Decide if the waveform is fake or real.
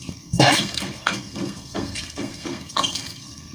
fake